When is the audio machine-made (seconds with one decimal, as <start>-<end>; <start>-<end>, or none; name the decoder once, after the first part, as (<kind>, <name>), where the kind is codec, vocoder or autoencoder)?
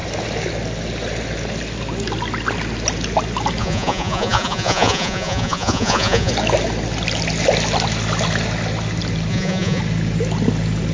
3.6-6.3 (vocoder, Vocos); 9.3-9.8